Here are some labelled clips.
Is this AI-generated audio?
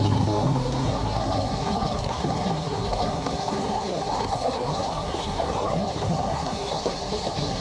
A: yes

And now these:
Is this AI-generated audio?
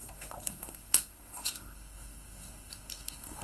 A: yes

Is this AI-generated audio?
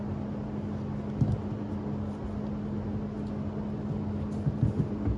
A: no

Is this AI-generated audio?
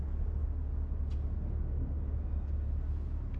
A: no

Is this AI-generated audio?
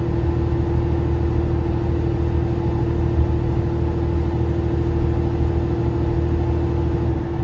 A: no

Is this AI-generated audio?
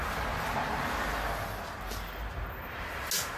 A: no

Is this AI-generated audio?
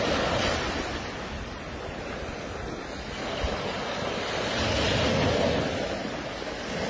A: no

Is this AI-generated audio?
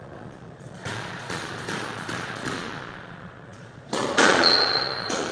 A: yes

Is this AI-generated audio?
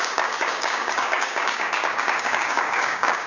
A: yes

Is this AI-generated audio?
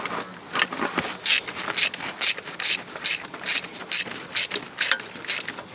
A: no